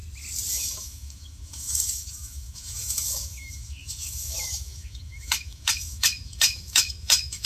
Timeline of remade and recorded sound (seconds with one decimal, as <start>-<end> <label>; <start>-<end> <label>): 0.0-0.5 recorded; 0.5-7.5 remade